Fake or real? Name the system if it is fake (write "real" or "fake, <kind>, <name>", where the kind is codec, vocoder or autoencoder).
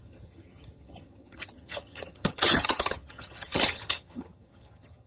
fake, vocoder, HiFi-GAN